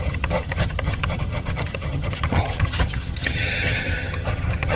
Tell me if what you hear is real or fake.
fake